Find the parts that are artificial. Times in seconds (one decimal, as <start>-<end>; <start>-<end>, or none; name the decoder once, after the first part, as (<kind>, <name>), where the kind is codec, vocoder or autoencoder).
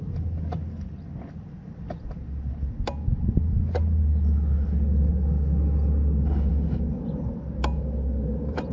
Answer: none